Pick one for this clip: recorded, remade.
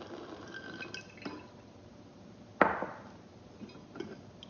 recorded